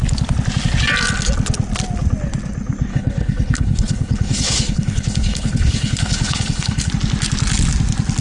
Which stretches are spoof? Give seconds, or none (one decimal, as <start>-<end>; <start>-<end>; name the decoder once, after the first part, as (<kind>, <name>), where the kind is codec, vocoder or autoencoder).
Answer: 2.9-6.9 (codec, HILCodec)